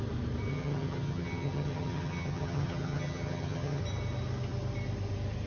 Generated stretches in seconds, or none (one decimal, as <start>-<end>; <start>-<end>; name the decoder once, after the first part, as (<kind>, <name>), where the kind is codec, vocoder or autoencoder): 0.5-3.8 (vocoder, HiFi-GAN)